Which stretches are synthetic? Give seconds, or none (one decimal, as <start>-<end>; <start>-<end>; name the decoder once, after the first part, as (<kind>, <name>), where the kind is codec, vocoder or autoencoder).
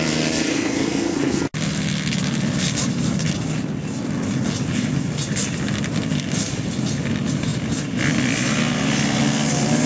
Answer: 0.5-1.4 (codec, SNAC)